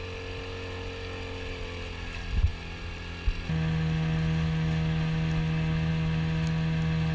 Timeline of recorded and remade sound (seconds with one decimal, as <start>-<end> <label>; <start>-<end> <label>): 0.0-7.1 recorded